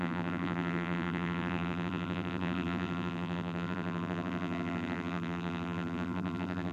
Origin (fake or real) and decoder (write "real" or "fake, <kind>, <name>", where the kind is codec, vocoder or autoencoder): fake, vocoder, BigVGAN v2